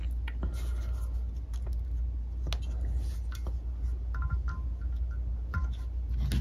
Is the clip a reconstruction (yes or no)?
no